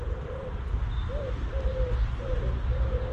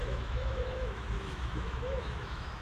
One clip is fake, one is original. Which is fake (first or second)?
second